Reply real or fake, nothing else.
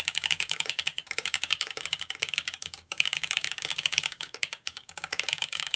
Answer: fake